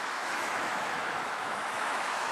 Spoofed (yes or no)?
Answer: yes